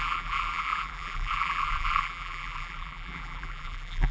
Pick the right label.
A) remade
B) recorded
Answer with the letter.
A